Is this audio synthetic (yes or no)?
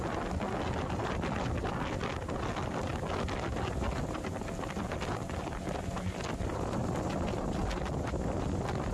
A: no